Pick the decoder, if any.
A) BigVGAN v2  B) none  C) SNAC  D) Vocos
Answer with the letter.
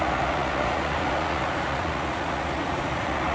D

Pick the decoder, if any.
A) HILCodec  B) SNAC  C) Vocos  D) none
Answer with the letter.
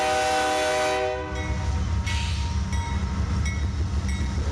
D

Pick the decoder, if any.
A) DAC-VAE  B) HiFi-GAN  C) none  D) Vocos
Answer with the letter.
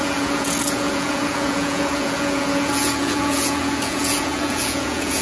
D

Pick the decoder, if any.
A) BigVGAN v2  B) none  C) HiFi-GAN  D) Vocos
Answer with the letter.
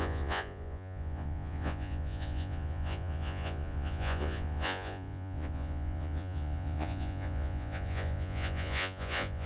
D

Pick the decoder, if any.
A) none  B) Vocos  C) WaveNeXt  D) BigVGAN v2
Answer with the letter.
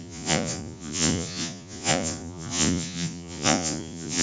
B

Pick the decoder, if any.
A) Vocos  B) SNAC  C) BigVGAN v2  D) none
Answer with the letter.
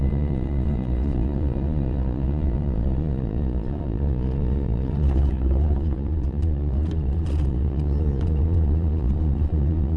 A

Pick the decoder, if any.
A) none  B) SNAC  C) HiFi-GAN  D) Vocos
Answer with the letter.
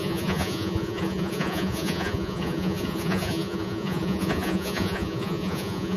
D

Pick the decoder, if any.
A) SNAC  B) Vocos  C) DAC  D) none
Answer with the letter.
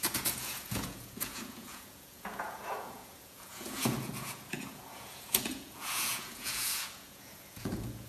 B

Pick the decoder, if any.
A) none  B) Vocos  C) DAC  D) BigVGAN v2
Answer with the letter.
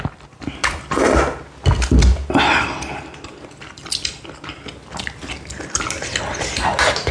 A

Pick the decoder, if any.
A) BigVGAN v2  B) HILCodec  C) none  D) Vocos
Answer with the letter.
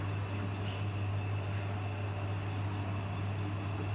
C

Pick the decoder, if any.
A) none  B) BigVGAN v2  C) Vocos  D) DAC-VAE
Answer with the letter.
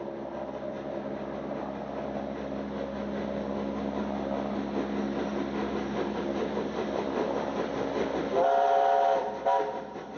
A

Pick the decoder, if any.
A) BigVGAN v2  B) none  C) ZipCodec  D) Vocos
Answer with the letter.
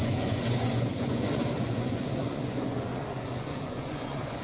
D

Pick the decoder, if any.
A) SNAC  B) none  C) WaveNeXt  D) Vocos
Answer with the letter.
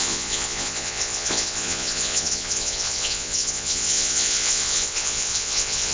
D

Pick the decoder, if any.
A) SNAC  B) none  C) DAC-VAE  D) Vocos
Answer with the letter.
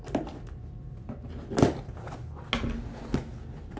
B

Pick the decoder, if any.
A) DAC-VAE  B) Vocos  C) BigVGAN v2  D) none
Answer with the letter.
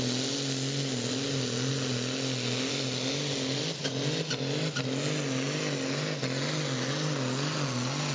D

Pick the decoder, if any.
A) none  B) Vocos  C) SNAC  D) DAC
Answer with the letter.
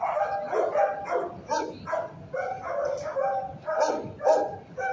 A